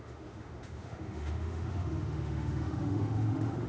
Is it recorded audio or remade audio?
remade